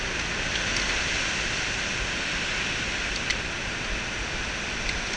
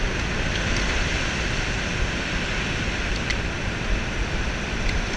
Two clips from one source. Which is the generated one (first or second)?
second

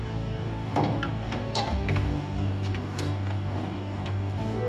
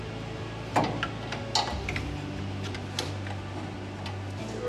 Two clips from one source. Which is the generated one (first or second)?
first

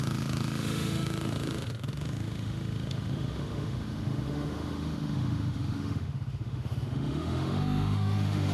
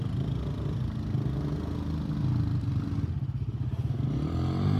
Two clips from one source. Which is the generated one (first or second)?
first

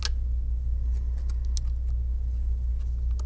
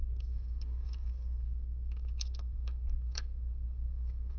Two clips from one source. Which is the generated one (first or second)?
second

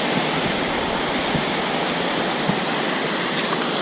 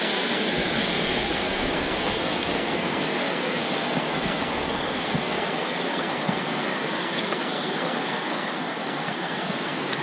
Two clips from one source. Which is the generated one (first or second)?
second